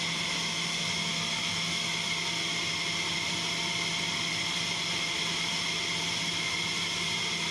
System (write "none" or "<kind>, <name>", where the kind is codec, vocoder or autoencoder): none